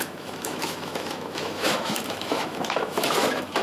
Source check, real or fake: fake